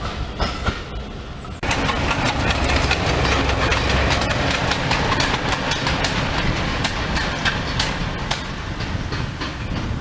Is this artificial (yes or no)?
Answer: no